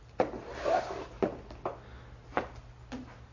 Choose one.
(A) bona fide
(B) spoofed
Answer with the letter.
A